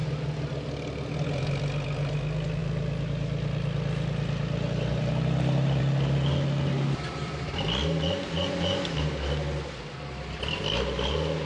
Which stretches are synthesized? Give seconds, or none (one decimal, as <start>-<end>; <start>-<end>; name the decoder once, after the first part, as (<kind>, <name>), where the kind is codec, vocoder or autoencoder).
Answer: none